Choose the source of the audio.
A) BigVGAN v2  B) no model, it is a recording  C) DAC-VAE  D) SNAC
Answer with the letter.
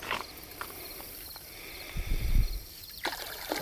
A